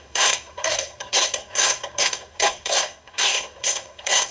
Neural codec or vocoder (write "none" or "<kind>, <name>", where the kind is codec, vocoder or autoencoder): codec, SNAC